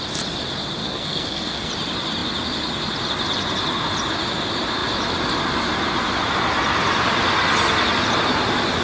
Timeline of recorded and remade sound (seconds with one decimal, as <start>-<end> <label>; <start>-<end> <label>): 0.0-0.8 recorded; 0.8-1.7 remade; 1.7-8.8 recorded